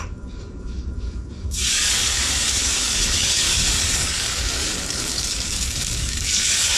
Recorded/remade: remade